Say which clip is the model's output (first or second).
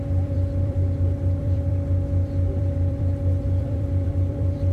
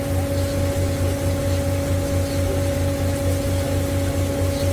first